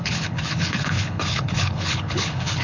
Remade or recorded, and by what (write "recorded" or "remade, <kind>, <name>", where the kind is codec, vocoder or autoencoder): remade, codec, HILCodec